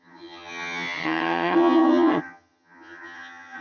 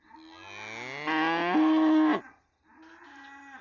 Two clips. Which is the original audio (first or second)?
second